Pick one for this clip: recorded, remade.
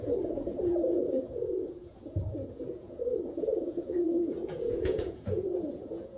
remade